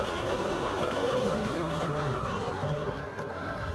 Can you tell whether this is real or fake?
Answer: fake